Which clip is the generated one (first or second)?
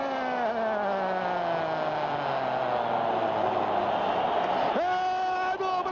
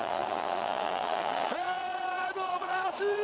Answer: second